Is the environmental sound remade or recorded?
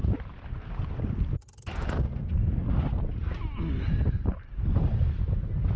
recorded